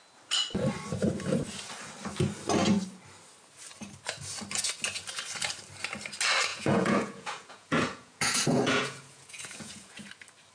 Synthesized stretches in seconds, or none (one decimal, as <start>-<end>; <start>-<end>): 6.5-10.1